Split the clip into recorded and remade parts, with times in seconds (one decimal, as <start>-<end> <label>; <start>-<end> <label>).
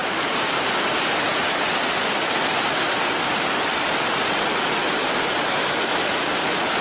0.0-6.8 recorded